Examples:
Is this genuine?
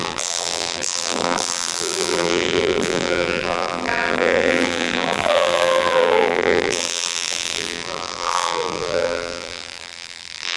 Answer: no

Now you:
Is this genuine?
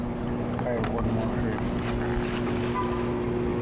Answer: yes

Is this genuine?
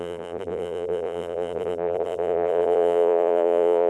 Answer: no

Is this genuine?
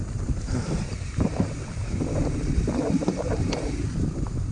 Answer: no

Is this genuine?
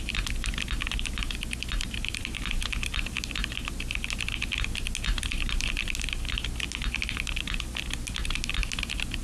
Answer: yes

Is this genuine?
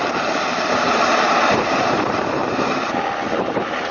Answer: no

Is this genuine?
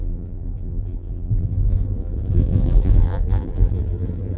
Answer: no